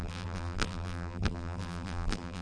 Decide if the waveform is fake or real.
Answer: fake